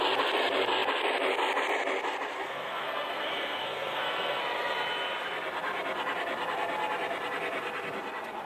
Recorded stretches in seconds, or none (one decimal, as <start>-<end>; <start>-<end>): 0.0-2.3; 4.4-8.4